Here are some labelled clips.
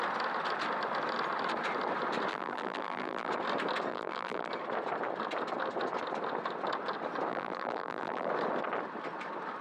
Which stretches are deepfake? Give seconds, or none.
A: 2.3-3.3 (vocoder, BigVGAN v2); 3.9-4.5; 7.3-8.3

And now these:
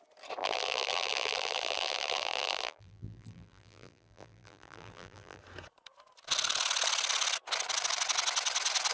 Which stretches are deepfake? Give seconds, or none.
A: 0.4-5.4 (vocoder, BigVGAN v2)

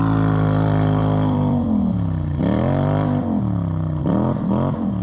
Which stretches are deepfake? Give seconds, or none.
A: 0.0-5.0 (vocoder, BigVGAN v2)